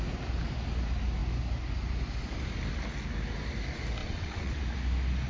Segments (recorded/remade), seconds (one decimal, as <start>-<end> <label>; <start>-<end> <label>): 0.0-4.0 recorded; 4.0-4.6 remade; 4.6-5.3 recorded